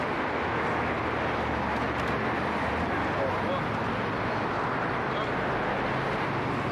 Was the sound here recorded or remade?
recorded